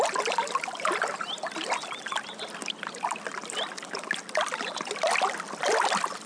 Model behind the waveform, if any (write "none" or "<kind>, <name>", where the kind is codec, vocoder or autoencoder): none